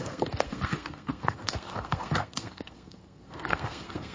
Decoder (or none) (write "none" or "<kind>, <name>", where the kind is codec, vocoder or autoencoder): codec, SNAC